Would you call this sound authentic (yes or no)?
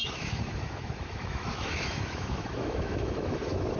no